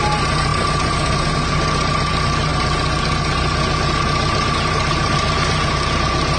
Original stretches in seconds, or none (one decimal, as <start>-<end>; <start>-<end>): 0.0-6.4

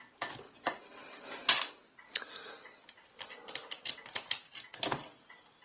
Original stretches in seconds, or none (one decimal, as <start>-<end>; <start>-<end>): 0.0-5.6

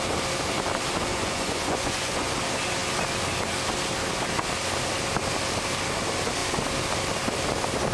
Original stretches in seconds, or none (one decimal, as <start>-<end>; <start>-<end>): 0.0-1.1; 2.3-7.9

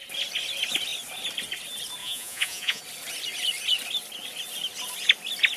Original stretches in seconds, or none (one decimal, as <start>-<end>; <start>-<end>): 0.0-2.0; 2.8-5.6

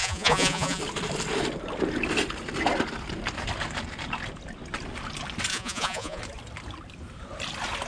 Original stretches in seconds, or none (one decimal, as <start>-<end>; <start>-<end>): 0.8-5.5; 6.2-7.9

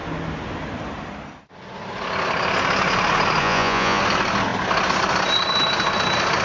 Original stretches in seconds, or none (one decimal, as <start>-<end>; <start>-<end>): 0.0-3.4; 4.0-6.4

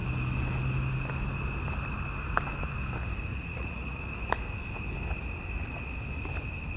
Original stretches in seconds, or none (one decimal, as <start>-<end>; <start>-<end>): 0.0-3.3; 4.0-6.8